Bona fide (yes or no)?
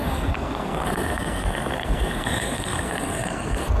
no